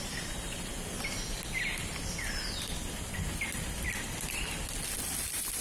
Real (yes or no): yes